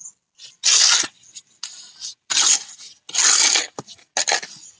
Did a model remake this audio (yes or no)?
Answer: no